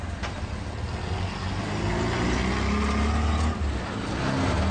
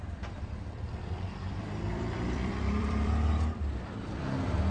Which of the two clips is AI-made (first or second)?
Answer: second